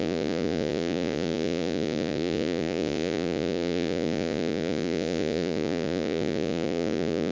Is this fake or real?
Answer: fake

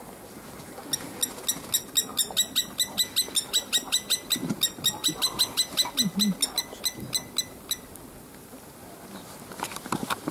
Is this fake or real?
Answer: real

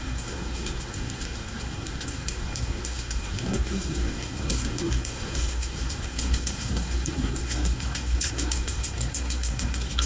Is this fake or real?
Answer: fake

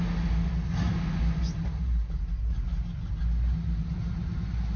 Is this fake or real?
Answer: real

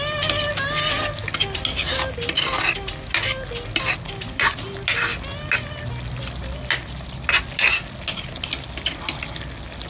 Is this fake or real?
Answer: real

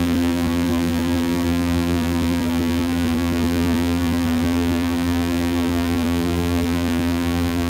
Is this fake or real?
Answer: fake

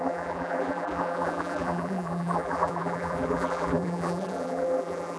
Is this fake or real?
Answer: fake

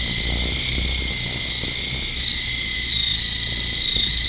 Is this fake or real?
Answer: real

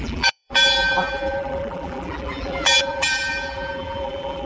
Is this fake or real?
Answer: fake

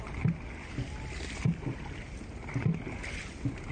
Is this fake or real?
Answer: real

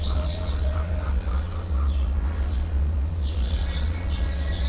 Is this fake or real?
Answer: fake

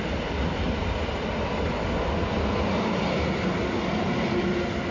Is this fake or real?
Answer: real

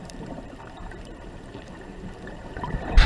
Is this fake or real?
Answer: fake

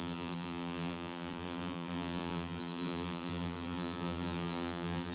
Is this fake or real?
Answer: fake